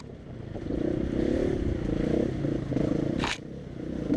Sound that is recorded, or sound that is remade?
recorded